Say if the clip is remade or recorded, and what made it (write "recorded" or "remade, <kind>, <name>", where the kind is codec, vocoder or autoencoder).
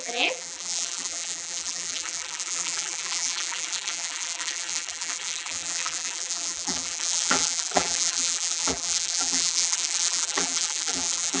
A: remade, vocoder, BigVGAN v2